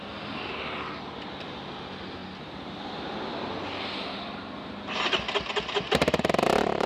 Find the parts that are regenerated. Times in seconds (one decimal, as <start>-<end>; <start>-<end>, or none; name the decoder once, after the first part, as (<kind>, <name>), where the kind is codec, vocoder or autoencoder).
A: none